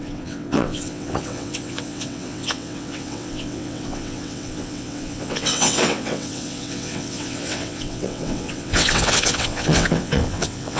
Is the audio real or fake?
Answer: fake